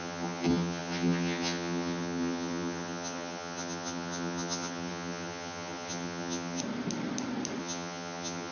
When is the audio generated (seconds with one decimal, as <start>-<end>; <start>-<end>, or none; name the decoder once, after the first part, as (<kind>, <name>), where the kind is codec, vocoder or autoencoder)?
0.0-6.6 (vocoder, HiFi-GAN); 7.6-8.5